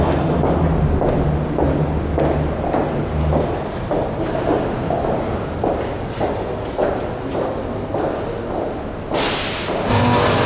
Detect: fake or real real